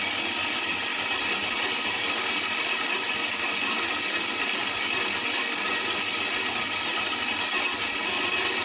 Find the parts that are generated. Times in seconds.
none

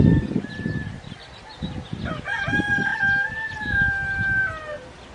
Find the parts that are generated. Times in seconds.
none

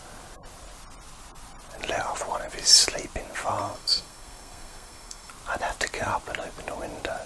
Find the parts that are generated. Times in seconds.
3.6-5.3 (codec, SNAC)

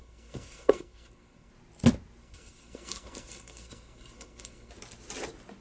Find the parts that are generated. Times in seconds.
0.0-1.5 (codec, SNAC); 2.2-4.7